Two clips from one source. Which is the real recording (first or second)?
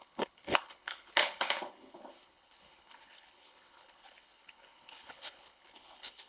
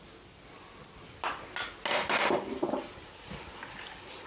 second